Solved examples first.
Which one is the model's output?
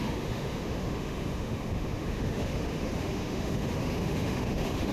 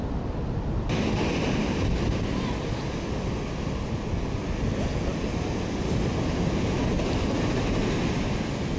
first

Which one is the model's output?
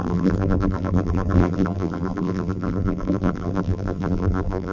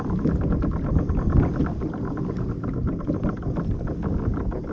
first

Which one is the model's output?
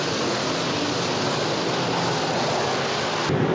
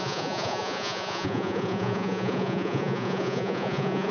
second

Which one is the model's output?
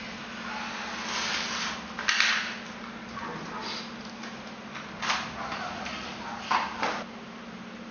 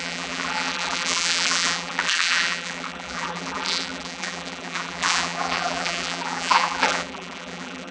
second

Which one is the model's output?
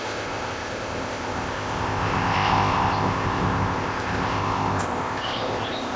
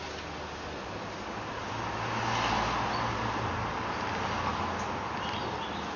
first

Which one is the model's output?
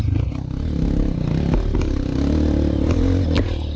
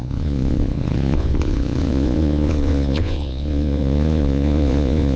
second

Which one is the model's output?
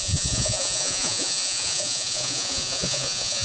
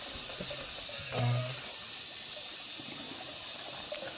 first